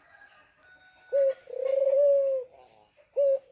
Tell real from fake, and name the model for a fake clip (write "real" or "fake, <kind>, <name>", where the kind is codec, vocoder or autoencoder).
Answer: real